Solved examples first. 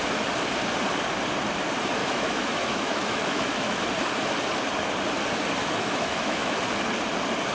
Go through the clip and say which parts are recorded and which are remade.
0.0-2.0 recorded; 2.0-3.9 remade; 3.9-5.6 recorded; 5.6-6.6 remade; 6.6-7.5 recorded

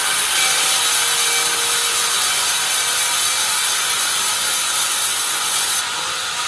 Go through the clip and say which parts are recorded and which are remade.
0.0-1.9 recorded; 1.9-2.5 remade; 2.5-3.4 recorded; 3.4-6.5 remade

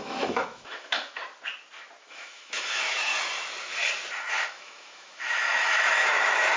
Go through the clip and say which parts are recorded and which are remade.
0.0-1.2 remade; 1.2-2.0 recorded; 2.0-3.1 remade; 3.1-4.3 recorded; 4.3-6.6 remade

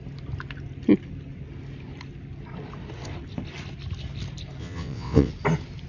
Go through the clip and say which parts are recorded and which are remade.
0.0-4.6 recorded; 4.6-5.3 remade; 5.3-5.9 recorded

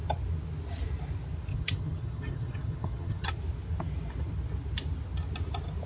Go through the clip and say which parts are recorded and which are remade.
0.0-1.5 recorded; 1.5-3.3 remade; 3.3-5.9 recorded

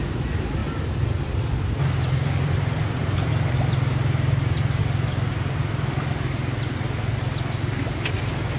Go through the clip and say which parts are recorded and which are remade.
0.0-0.6 recorded; 0.6-4.8 remade; 4.8-8.6 recorded

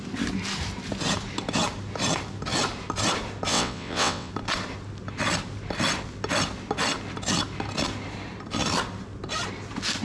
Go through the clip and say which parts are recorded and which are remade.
0.0-3.5 recorded; 3.5-4.3 remade; 4.3-10.0 recorded

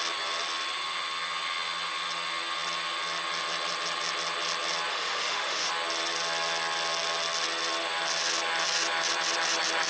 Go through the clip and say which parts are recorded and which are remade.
0.0-4.9 recorded; 4.9-5.7 remade; 5.7-9.9 recorded